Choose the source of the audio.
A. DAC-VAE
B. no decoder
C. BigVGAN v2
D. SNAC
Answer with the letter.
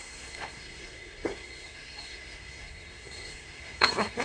D